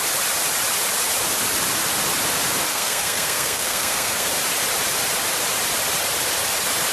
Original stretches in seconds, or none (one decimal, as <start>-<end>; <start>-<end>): 0.0-2.7; 4.3-6.9